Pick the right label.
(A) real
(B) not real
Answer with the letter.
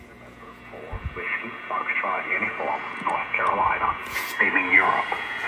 B